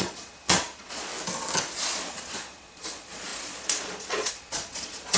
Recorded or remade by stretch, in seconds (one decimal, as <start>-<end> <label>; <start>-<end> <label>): 0.0-1.1 remade; 1.1-1.8 recorded; 1.8-5.2 remade